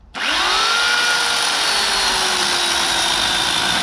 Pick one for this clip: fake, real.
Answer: real